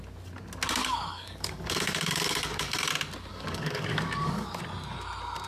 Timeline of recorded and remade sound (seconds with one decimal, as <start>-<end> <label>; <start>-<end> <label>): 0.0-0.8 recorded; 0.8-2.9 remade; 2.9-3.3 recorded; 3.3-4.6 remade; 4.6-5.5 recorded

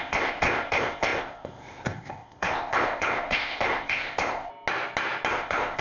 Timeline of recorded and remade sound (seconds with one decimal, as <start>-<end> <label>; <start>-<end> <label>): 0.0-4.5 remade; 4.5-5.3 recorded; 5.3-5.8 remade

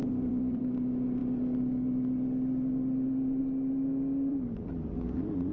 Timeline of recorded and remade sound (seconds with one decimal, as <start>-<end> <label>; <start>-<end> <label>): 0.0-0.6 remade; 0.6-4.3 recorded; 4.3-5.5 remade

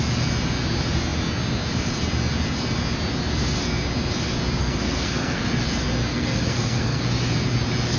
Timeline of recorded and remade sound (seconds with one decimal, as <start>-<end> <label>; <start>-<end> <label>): 0.0-4.6 recorded; 4.6-5.4 remade; 5.4-6.1 recorded; 6.1-7.0 remade; 7.0-8.0 recorded

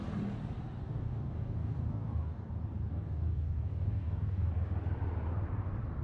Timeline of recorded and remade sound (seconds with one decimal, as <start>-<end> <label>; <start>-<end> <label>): 0.0-0.8 recorded; 0.8-2.5 remade; 2.5-2.9 recorded; 2.9-4.5 remade; 4.5-6.0 recorded

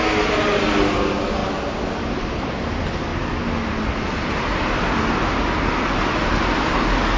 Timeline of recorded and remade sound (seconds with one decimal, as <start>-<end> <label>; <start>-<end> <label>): 0.0-7.2 recorded

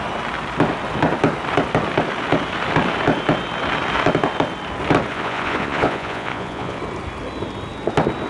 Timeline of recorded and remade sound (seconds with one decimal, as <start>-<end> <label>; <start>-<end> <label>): 0.0-5.1 recorded; 5.1-6.8 remade; 6.8-8.3 recorded